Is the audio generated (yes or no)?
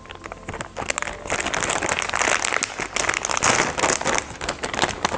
no